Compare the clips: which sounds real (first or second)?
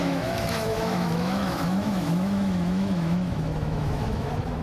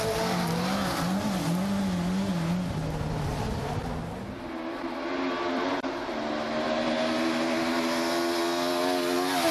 second